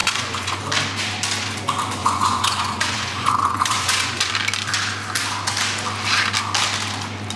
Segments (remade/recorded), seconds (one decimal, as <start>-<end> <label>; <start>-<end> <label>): 0.0-0.6 remade; 0.6-2.0 recorded; 2.0-4.3 remade; 4.3-7.4 recorded